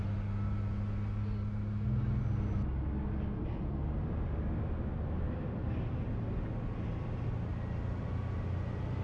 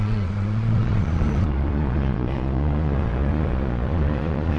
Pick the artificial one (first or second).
second